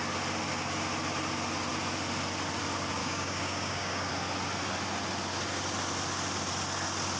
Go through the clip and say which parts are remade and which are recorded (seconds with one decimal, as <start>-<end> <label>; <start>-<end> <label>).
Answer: 0.0-3.0 recorded; 3.0-4.1 remade; 4.1-7.2 recorded